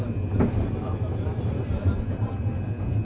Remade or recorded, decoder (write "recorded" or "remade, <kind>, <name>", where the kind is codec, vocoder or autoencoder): recorded